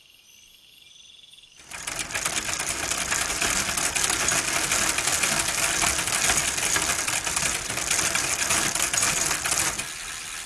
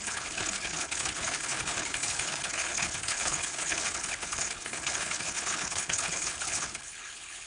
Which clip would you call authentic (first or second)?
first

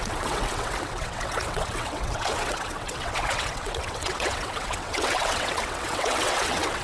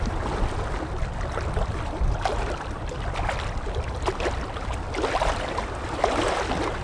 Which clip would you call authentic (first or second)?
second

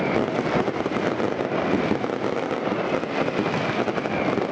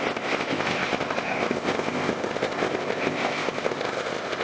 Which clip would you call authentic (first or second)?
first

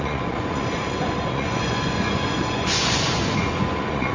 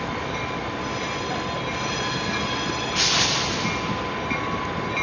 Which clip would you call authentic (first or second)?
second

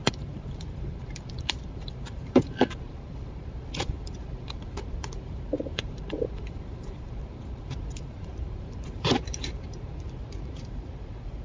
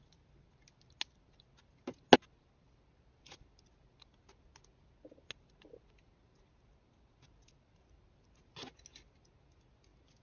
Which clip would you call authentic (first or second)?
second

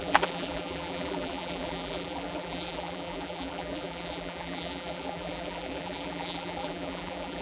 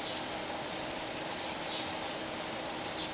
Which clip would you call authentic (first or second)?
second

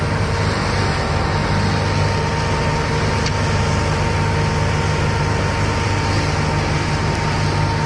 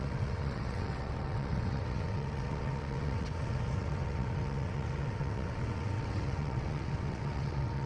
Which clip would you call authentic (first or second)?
first